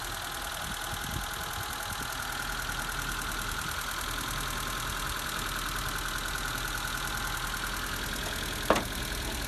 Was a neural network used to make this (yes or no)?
no